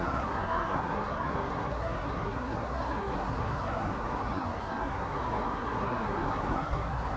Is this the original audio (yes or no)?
no